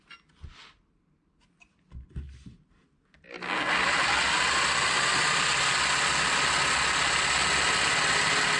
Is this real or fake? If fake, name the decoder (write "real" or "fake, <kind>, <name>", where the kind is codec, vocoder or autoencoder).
real